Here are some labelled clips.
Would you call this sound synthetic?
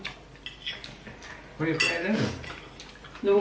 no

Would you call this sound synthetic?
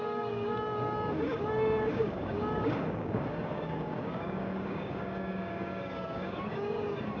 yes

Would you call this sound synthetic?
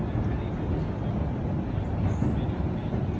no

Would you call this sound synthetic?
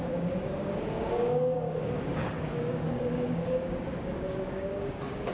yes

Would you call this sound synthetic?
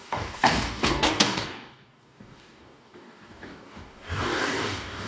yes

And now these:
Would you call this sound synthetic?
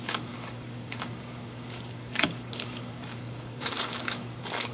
yes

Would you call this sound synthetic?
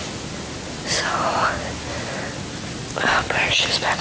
no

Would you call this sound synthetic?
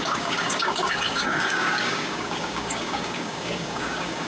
yes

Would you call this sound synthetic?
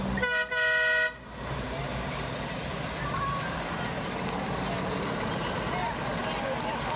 no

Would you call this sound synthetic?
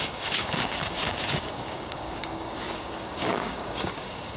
yes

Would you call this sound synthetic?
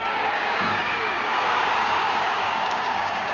yes